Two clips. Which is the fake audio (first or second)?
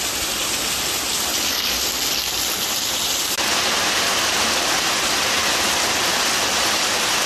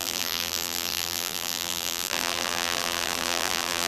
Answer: second